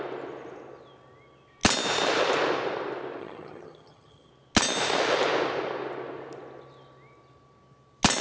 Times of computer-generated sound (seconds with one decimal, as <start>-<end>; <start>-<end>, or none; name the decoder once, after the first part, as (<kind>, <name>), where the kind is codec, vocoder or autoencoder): 3.2-4.3 (vocoder, HiFi-GAN)